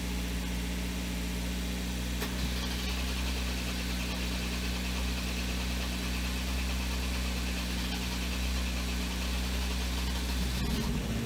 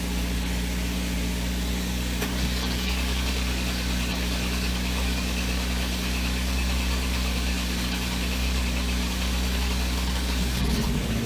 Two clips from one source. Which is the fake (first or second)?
second